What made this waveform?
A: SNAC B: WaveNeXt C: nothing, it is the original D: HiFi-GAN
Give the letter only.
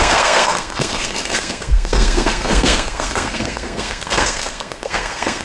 A